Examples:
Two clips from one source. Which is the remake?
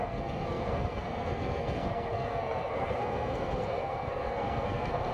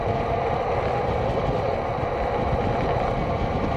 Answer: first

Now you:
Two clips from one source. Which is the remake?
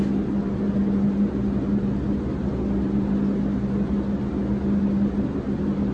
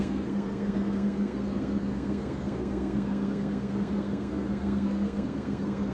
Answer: second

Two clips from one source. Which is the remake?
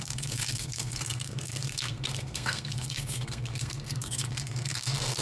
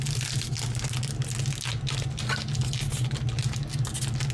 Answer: first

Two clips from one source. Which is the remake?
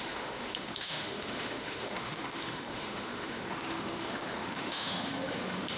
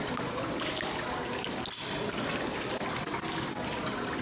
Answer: first